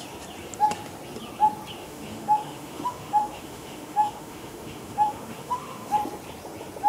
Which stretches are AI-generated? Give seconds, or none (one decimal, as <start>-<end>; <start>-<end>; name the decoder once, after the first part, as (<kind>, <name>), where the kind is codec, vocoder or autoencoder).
1.8-5.9 (autoencoder, DAC-VAE)